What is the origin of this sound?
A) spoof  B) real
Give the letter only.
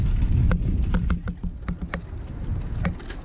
B